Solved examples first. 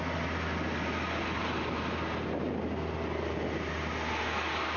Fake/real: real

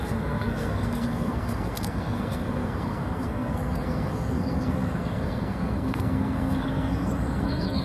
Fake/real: fake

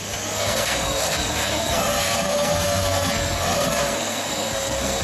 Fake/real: fake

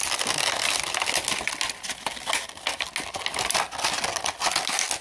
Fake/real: real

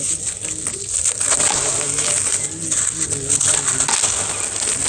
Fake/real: real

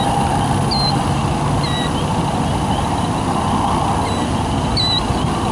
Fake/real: real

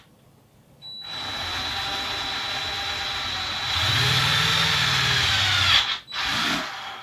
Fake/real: real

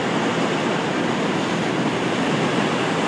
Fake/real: real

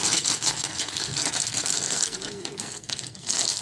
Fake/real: fake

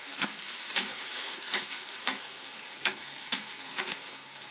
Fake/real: fake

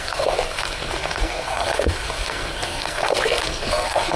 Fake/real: fake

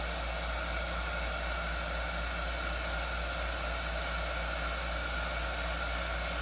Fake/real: real